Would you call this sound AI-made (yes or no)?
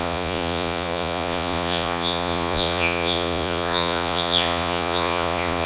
yes